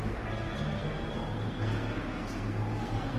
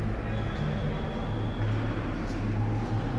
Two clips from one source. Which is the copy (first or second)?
first